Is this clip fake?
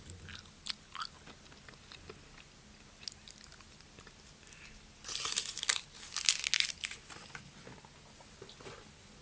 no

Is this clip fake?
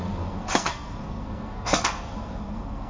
yes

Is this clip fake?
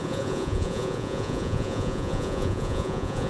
yes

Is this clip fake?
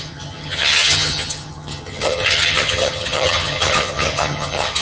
yes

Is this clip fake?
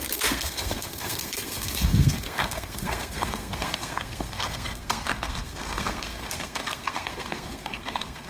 yes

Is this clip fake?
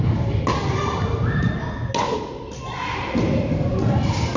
no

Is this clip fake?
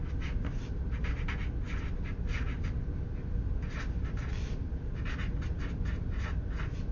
no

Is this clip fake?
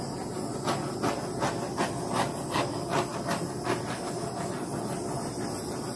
no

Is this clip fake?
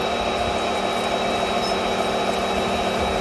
no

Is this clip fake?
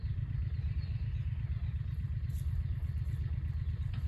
yes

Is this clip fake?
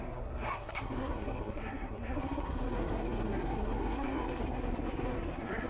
yes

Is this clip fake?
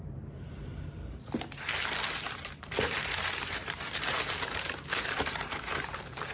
yes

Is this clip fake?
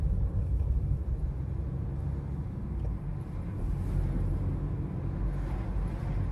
no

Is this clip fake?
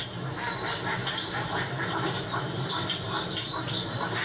yes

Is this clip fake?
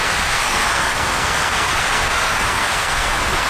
yes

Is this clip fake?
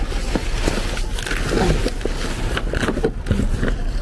no